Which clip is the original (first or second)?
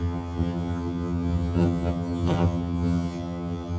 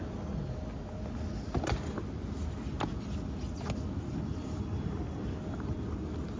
second